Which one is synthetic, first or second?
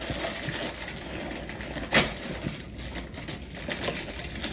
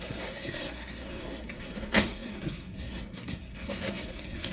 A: second